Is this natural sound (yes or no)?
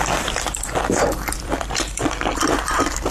no